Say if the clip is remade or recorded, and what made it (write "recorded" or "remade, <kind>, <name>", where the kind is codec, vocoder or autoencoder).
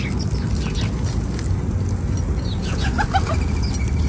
recorded